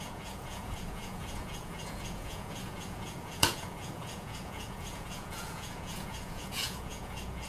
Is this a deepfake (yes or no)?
yes